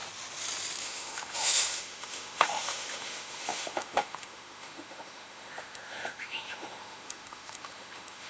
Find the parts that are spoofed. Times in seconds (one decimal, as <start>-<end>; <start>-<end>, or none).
0.8-8.3